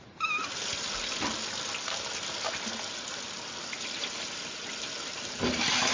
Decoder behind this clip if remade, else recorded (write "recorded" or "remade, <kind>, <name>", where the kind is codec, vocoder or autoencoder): recorded